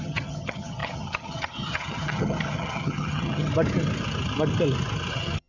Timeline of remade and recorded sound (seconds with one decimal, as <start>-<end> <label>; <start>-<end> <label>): 0.0-3.5 remade; 3.5-5.1 recorded; 5.1-5.5 remade